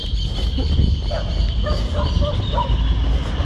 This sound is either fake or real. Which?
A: real